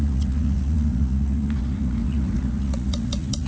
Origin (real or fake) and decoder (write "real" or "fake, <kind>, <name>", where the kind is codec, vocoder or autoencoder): fake, vocoder, Vocos